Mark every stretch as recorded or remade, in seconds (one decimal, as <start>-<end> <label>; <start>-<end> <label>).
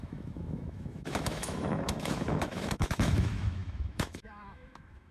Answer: 0.0-5.1 remade